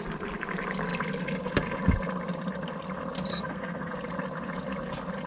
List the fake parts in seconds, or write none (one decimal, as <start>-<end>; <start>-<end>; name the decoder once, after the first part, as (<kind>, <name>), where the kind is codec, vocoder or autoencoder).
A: 3.3-3.9 (codec, SNAC)